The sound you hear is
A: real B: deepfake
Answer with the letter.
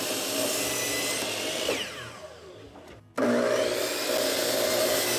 A